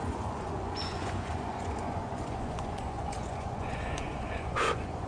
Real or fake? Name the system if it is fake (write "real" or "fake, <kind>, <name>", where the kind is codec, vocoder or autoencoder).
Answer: fake, vocoder, Vocos